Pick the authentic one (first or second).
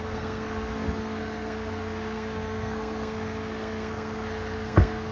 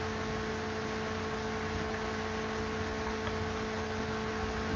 second